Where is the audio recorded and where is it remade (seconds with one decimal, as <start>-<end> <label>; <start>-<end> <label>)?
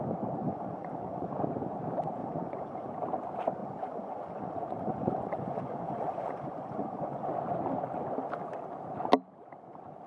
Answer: 0.0-0.4 recorded; 0.4-1.4 remade; 1.4-2.2 recorded; 2.2-2.9 remade; 2.9-3.6 recorded; 3.6-7.3 remade; 7.3-10.1 recorded